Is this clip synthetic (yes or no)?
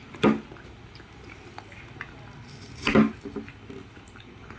no